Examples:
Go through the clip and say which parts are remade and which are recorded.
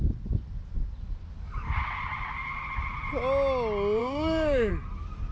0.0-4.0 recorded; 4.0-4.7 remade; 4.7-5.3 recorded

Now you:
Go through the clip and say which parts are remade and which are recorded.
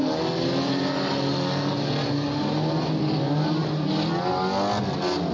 0.0-5.3 recorded